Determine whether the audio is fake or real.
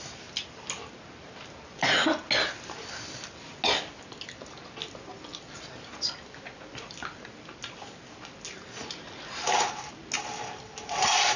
real